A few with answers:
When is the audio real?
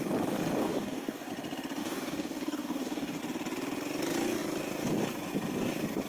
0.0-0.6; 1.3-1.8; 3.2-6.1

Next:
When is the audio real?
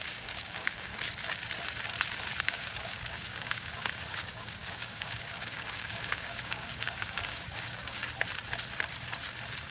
0.9-2.4; 8.0-9.7